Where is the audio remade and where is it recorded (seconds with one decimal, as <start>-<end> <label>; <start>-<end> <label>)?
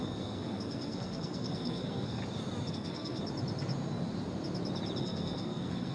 0.0-2.2 remade; 2.2-2.7 recorded; 2.7-3.2 remade; 3.2-5.0 recorded; 5.0-5.9 remade